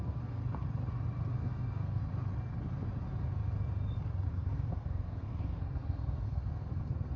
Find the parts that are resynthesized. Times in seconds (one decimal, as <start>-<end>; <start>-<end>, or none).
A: 0.0-0.4; 1.3-2.0; 4.3-7.2